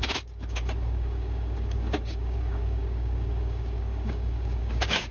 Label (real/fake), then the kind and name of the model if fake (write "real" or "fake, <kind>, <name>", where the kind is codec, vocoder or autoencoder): fake, codec, DAC